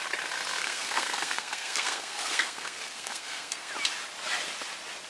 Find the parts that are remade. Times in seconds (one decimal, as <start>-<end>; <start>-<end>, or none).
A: 0.6-3.7